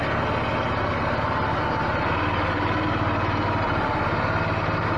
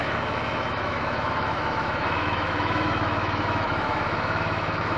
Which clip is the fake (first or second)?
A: second